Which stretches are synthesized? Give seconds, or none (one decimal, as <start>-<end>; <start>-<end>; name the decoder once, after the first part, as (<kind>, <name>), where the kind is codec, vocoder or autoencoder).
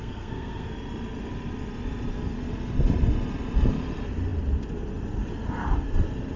0.0-0.7 (codec, SNAC)